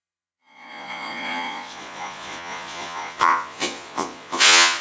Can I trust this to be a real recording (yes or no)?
no